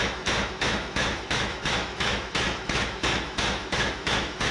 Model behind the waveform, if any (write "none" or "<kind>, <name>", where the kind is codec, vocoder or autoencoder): autoencoder, DAC-VAE